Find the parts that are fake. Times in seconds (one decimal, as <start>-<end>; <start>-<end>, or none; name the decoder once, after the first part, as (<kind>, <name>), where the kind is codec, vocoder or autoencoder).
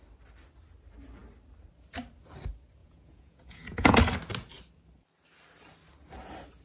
2.8-4.0 (vocoder, Vocos)